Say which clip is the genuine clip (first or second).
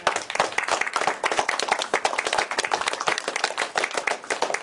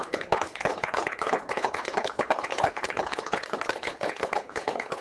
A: first